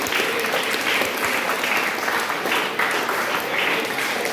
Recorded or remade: recorded